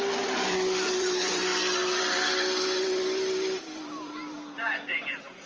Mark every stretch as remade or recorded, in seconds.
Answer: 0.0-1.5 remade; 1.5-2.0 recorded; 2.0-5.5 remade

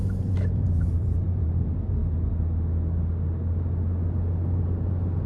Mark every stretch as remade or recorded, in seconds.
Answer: 0.0-2.0 remade; 2.0-5.3 recorded

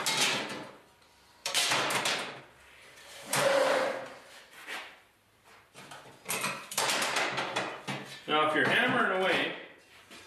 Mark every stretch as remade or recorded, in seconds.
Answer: 0.0-1.4 recorded; 1.4-2.4 remade; 2.4-4.6 recorded; 4.6-6.8 remade; 6.8-10.3 recorded

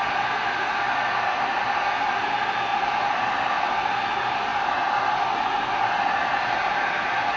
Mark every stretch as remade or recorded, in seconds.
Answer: 0.0-2.7 recorded; 2.7-3.3 remade; 3.3-7.4 recorded

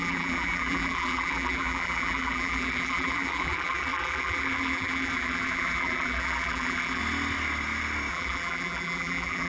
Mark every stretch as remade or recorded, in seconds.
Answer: 0.0-7.0 remade; 7.0-8.1 recorded; 8.1-9.5 remade

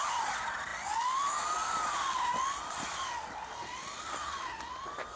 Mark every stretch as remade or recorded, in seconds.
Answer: 0.0-5.2 recorded

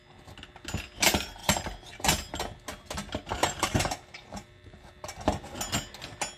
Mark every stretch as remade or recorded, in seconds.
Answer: 0.0-1.4 recorded; 1.4-2.3 remade; 2.3-3.4 recorded; 3.4-5.2 remade; 5.2-6.4 recorded